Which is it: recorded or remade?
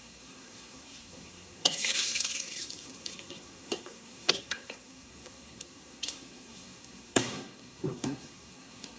remade